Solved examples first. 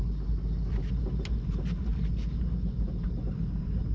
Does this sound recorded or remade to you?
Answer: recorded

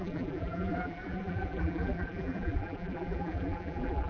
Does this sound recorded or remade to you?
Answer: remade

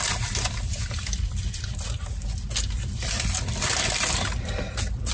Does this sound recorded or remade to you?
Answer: remade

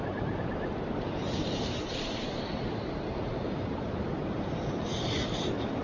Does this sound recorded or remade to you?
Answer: remade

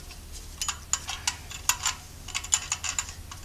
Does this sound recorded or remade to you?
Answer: recorded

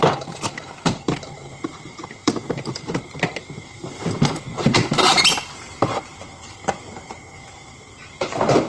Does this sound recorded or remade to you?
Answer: remade